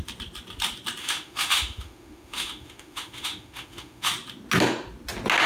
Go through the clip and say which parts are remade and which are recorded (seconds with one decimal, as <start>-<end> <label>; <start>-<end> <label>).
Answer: 0.0-1.0 recorded; 1.0-4.1 remade; 4.1-5.5 recorded